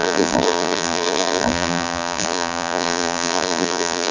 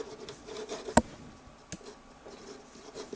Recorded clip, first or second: second